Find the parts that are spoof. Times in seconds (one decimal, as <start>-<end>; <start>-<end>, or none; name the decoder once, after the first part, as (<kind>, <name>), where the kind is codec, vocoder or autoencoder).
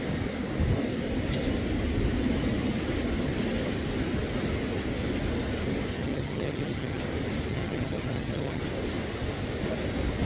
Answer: 6.0-7.0 (vocoder, HiFi-GAN); 7.5-8.6